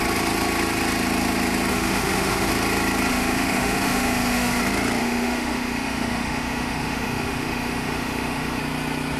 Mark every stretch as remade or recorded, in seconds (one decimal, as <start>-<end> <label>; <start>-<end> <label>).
0.0-1.7 recorded; 1.7-2.5 remade; 2.5-3.1 recorded; 3.1-4.6 remade; 4.6-5.0 recorded; 5.0-8.6 remade; 8.6-9.2 recorded

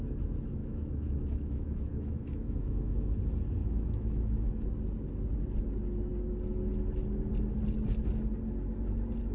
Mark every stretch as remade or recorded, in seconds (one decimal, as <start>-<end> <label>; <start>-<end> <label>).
0.0-0.6 recorded; 0.6-3.2 remade; 3.2-3.6 recorded; 3.6-4.5 remade; 4.5-9.3 recorded